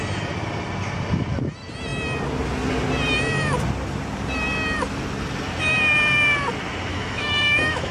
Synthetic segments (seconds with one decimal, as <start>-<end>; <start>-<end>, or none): 6.9-7.9